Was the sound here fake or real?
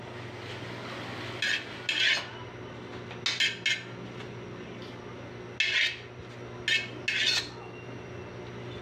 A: real